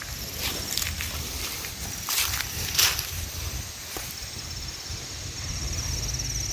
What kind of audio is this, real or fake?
fake